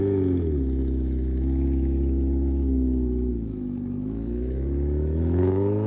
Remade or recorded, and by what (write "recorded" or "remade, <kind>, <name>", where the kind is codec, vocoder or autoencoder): remade, autoencoder, DAC-VAE